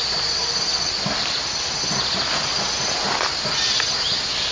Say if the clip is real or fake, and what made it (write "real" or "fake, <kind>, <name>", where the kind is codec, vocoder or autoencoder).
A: real